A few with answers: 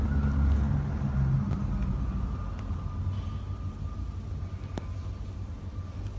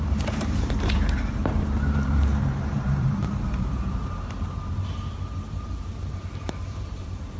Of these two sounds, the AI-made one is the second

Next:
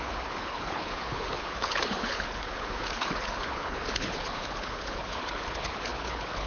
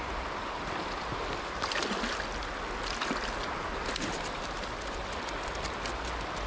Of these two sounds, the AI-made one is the first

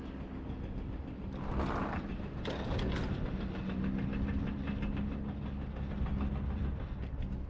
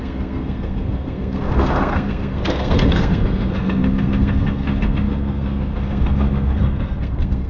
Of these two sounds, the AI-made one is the second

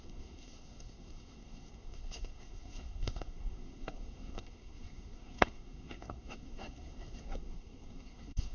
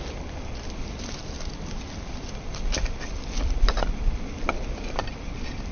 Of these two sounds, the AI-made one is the first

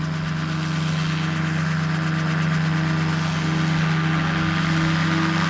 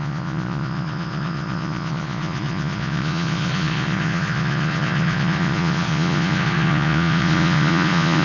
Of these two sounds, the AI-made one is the second